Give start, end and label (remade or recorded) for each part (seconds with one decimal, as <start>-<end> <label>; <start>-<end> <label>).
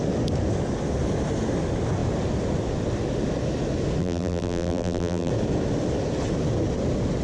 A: 0.0-4.0 recorded; 4.0-5.3 remade; 5.3-7.2 recorded